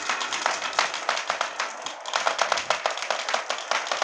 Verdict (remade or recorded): recorded